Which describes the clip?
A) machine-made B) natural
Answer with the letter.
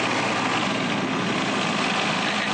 B